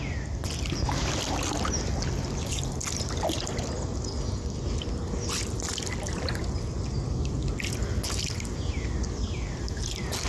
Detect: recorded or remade recorded